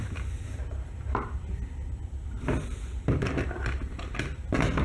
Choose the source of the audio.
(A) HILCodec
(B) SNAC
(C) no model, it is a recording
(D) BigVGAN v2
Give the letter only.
D